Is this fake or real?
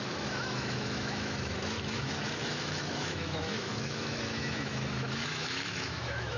fake